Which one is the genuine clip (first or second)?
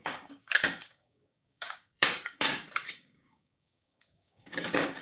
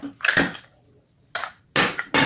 second